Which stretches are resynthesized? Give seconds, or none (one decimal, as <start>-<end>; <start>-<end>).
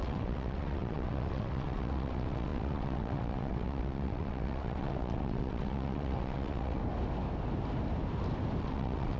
0.0-6.8; 8.6-9.2